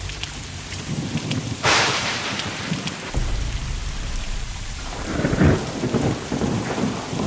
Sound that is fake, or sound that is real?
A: fake